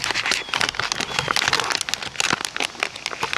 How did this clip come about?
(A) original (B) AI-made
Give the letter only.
A